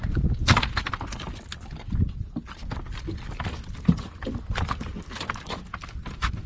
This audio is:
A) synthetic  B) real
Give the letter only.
B